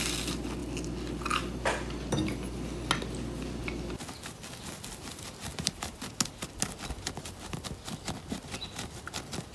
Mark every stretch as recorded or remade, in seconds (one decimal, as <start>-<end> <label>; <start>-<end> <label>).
0.0-5.4 recorded; 5.4-5.9 remade; 5.9-9.5 recorded